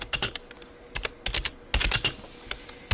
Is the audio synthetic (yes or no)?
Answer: no